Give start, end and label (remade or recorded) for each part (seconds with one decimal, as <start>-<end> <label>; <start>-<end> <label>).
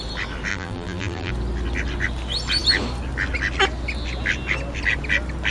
0.0-0.5 recorded; 0.5-1.3 remade; 1.3-5.5 recorded